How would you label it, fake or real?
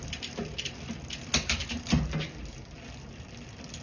real